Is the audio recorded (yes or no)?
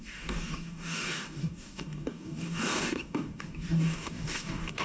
no